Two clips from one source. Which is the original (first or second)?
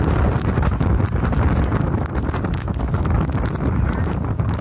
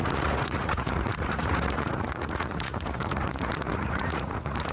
first